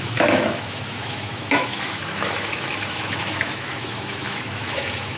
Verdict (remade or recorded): remade